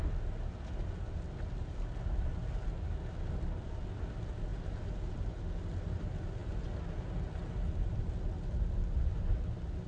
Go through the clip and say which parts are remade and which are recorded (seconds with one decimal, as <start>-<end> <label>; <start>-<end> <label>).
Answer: 0.0-9.9 recorded